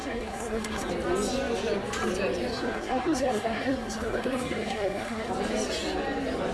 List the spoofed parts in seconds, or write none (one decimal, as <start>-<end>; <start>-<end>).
0.0-0.9; 2.5-5.3